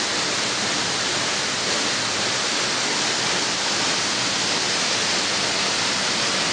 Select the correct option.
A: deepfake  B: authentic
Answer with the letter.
B